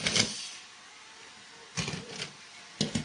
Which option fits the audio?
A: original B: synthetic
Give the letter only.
A